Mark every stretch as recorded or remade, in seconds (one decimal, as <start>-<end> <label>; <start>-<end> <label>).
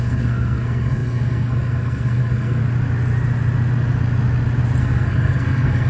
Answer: 0.0-2.6 remade; 2.6-4.8 recorded; 4.8-5.9 remade